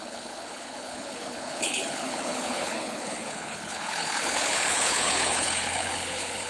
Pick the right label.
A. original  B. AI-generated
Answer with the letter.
B